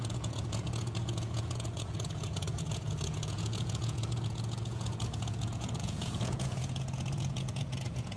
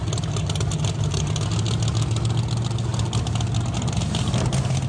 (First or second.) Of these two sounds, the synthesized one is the first